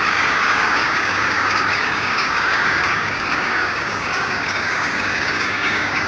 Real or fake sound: fake